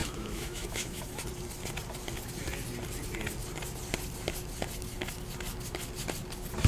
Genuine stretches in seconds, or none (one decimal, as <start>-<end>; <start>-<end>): 1.0-6.7